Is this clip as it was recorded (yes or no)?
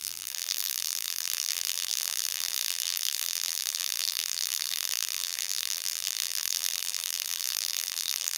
no